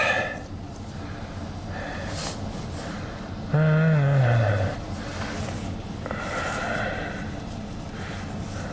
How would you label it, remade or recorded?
recorded